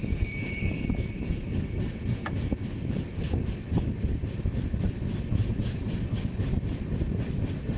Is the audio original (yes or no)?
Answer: yes